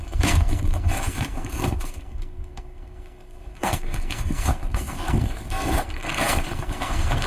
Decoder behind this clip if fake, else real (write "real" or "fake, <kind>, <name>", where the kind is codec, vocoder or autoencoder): fake, codec, SNAC